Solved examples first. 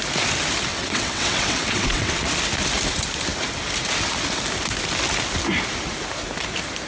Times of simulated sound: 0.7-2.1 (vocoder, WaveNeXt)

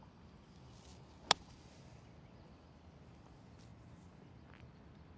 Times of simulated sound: none